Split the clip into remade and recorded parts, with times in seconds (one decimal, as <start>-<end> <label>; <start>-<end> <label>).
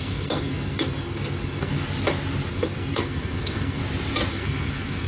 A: 0.0-1.7 remade; 1.7-2.5 recorded; 2.5-3.8 remade; 3.8-4.3 recorded; 4.3-5.1 remade